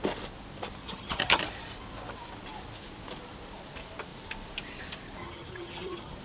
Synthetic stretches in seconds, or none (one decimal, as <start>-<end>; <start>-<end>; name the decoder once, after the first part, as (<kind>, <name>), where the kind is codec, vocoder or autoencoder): 0.8-1.4 (vocoder, HiFi-GAN); 5.2-6.2